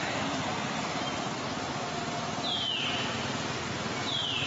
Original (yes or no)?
yes